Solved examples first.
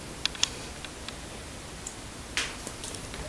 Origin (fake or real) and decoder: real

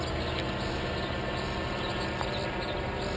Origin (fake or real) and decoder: real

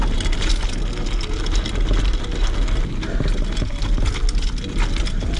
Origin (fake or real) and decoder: real